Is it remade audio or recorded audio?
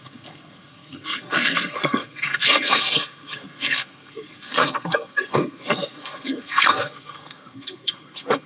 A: remade